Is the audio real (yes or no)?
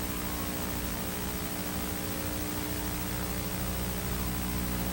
yes